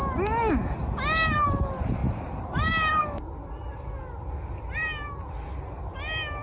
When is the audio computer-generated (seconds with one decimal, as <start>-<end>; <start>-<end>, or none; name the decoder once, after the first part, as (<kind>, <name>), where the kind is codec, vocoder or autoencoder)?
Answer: none